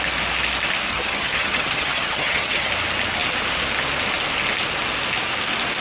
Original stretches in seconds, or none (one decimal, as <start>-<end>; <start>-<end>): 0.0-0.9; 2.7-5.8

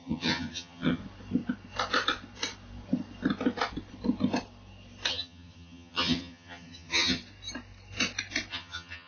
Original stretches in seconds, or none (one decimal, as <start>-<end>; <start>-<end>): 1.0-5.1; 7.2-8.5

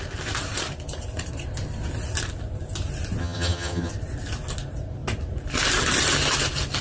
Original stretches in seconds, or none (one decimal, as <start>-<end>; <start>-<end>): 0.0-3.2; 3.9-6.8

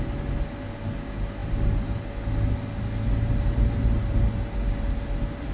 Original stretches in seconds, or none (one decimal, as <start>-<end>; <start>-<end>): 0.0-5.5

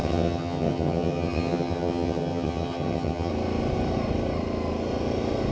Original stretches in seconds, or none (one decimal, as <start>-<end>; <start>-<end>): 3.3-5.5